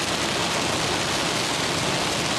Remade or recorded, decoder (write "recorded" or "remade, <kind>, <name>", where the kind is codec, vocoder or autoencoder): recorded